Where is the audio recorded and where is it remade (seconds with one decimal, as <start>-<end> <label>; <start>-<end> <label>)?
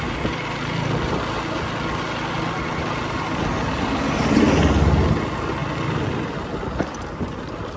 0.0-7.8 recorded